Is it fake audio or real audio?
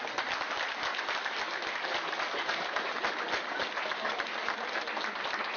real